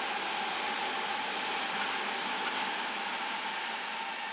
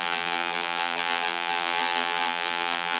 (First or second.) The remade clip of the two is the second